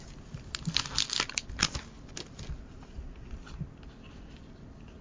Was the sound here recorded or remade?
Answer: recorded